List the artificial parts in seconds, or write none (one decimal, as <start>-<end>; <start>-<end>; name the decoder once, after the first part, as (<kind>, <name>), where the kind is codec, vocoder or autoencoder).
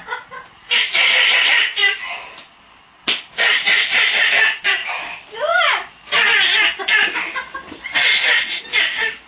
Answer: none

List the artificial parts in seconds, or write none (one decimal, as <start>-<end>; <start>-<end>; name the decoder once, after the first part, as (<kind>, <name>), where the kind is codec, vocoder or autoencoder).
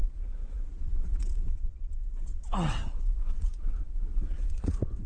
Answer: 0.0-5.1 (vocoder, WaveNeXt)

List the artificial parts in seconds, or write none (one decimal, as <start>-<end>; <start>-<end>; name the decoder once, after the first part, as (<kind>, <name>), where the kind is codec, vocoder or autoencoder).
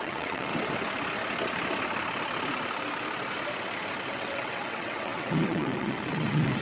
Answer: 0.0-0.5 (vocoder, WaveNeXt); 4.1-6.6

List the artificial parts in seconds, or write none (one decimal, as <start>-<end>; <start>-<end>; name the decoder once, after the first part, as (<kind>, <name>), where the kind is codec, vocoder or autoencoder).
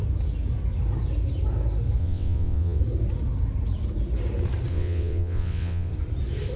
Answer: 2.0-2.8 (vocoder, WaveNeXt); 4.7-5.9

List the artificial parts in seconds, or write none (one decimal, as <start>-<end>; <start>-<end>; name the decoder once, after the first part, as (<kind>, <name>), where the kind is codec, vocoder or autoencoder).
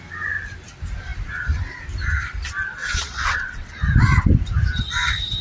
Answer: 2.8-3.7 (vocoder, WaveNeXt)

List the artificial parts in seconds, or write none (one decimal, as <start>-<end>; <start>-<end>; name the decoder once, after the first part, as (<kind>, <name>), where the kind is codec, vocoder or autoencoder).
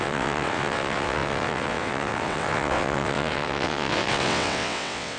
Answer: 0.0-5.2 (vocoder, WaveNeXt)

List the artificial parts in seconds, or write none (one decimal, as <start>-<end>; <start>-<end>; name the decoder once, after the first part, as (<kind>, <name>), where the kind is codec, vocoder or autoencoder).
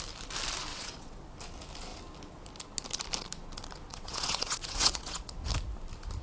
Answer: 0.7-1.3 (vocoder, WaveNeXt); 3.9-5.5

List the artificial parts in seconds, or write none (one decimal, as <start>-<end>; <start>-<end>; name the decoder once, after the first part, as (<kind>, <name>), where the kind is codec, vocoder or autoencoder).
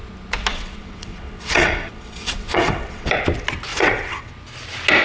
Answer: 0.5-3.1 (vocoder, WaveNeXt); 3.7-4.3